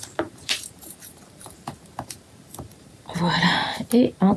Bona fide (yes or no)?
no